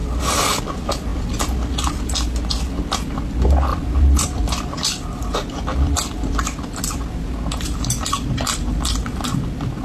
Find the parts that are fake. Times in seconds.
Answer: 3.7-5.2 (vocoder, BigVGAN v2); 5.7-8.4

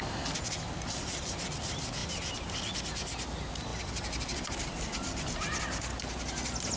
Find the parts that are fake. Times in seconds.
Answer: 3.7-5.6 (vocoder, BigVGAN v2)

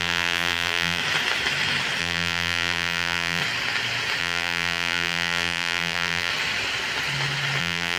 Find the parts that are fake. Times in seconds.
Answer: 0.0-1.0 (vocoder, BigVGAN v2); 2.0-3.4; 4.2-6.3; 7.6-8.0